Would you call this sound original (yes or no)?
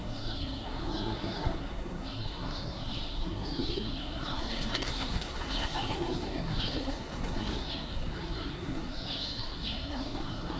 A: no